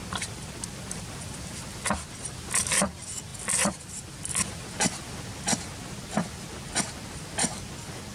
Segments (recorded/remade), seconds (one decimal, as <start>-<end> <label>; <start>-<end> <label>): 0.0-1.6 remade; 1.6-3.3 recorded; 3.3-5.2 remade; 5.2-8.1 recorded